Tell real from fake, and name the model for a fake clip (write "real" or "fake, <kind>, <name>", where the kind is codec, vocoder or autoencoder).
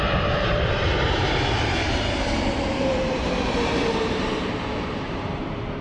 fake, vocoder, BigVGAN v2